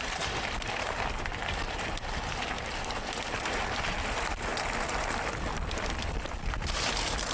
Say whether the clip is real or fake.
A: fake